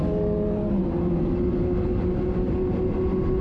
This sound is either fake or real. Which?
real